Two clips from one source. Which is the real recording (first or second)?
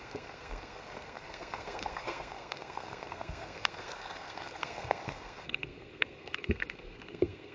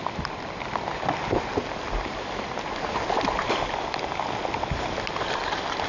second